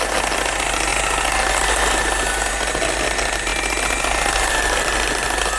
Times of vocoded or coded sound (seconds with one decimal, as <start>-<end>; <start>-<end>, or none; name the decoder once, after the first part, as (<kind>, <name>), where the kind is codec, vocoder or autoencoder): none